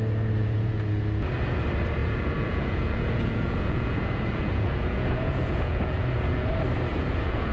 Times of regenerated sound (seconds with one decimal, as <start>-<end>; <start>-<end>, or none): 0.4-1.3; 2.0-6.5; 6.9-7.5